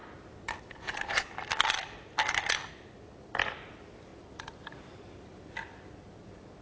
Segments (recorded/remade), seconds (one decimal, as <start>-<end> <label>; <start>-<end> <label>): 0.0-2.7 recorded; 2.7-6.6 remade